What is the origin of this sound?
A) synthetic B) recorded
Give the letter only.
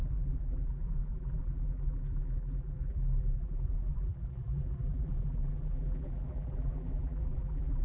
A